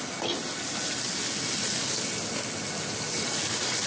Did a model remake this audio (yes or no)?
no